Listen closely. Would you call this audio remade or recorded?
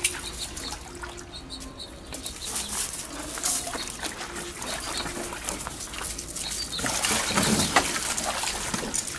recorded